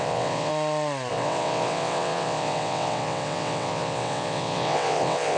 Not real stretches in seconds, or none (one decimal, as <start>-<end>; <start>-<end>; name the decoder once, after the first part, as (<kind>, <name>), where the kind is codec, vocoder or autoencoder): 0.0-0.5 (vocoder, WaveNeXt); 1.1-5.4

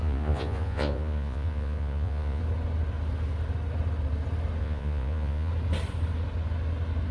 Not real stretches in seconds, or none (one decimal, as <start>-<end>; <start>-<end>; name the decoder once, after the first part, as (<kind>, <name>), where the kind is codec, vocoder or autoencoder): 0.0-2.4 (vocoder, Vocos); 4.6-5.5

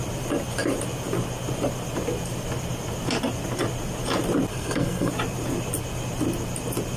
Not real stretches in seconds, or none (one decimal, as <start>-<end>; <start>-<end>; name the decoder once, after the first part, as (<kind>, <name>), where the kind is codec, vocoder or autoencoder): 4.5-5.1 (codec, SNAC)

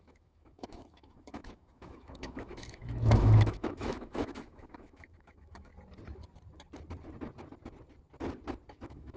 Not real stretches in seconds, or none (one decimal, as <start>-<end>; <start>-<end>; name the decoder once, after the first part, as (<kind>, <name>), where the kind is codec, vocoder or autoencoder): 0.0-5.7 (autoencoder, DAC-VAE); 8.7-9.2

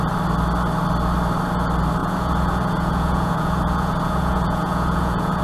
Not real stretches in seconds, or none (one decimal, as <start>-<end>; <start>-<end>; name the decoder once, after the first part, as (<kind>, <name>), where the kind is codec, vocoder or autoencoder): 2.0-5.4 (vocoder, Vocos)

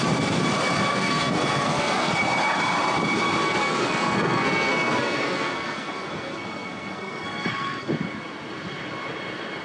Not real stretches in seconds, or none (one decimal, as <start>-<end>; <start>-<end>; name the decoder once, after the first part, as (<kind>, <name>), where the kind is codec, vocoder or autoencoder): 0.9-2.1 (codec, SNAC); 3.4-7.9

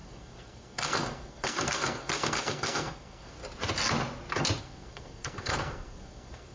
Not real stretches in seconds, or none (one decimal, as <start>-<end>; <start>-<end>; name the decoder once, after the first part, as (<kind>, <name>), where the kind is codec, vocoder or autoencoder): 0.0-3.4 (codec, SNAC); 4.6-6.5

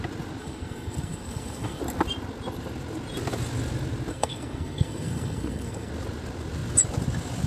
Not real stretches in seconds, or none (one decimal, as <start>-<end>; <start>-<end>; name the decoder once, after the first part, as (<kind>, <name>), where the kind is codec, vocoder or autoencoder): 0.4-1.8 (codec, SNAC); 4.1-5.9